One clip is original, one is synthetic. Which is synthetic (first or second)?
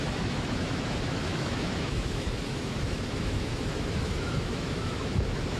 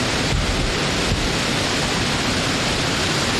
first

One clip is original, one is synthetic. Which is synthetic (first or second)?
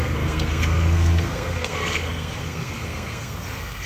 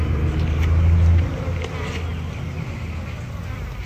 first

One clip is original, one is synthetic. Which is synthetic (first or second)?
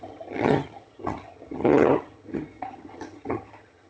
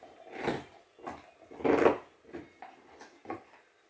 first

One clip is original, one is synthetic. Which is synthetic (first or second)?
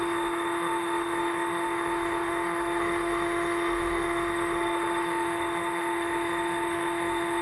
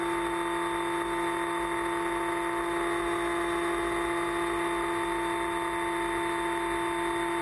first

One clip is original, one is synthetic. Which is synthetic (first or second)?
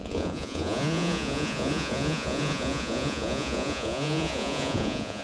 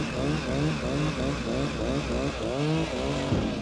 first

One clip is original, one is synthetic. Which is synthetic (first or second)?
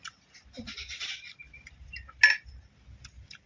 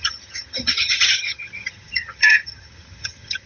second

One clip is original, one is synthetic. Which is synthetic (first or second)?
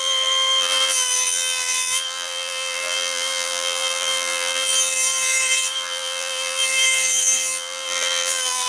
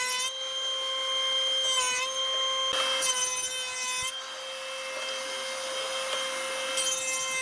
first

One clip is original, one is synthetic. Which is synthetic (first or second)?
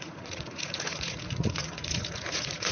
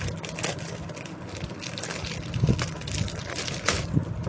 first